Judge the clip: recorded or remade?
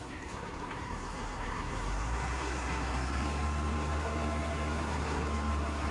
remade